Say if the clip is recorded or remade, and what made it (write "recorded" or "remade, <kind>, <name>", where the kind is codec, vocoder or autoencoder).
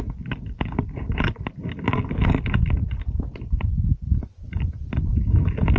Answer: recorded